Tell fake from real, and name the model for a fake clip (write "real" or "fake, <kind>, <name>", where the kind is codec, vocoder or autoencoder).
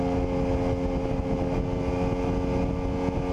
real